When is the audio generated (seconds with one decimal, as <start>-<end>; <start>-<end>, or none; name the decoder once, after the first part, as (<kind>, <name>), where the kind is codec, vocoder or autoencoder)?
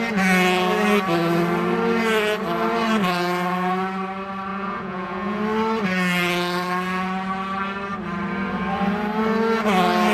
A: 4.5-5.4 (vocoder, Vocos)